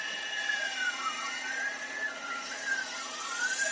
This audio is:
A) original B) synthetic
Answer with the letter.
B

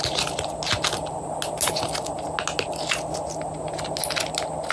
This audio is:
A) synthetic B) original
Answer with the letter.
B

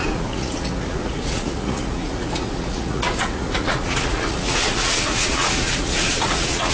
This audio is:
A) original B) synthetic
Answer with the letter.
B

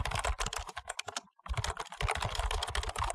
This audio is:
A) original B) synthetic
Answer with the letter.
A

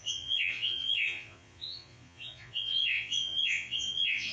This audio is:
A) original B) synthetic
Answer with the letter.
B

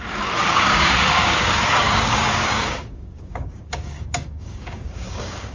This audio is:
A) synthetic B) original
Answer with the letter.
A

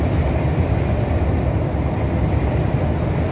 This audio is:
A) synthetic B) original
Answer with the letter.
A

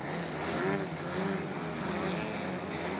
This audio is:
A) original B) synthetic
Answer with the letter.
A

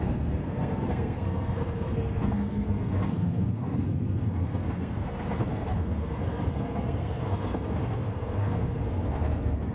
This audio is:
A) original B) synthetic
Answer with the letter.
B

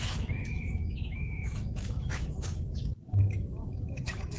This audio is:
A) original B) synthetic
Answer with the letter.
B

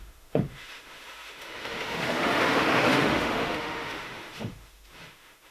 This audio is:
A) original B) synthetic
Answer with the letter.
B